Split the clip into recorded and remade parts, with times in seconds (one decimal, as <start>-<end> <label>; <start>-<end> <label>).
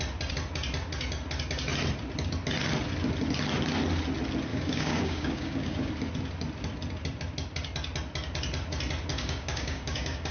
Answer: 0.0-4.5 recorded; 4.5-5.9 remade; 5.9-9.1 recorded; 9.1-10.3 remade